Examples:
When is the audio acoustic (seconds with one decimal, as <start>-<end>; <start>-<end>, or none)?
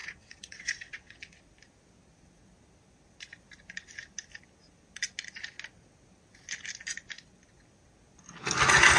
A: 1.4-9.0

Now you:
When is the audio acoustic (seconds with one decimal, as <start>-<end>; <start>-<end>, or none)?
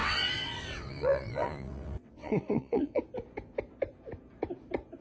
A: 3.0-5.0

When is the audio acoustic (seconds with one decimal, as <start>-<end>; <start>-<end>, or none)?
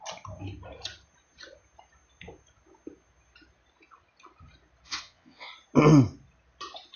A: 0.0-4.9; 5.5-7.0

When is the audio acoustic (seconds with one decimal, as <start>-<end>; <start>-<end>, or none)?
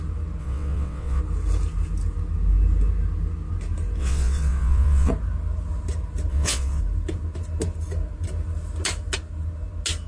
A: 0.0-0.4; 1.2-4.0; 5.1-6.3; 6.8-10.1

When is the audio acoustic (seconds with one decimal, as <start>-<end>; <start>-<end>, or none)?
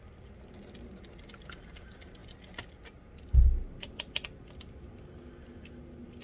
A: 0.0-6.2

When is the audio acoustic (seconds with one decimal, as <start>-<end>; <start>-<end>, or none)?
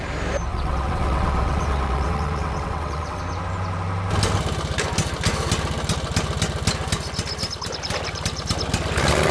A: 0.0-0.5; 3.2-9.3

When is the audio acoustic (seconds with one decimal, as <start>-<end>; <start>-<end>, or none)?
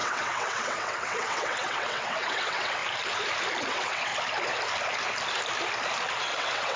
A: 2.8-3.6; 4.1-6.2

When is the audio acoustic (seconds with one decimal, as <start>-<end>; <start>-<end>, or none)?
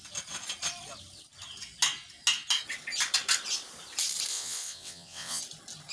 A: 0.0-4.3; 5.4-5.9